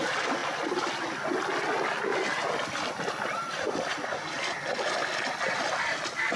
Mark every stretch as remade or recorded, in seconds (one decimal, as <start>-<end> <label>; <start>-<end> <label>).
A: 0.0-6.4 recorded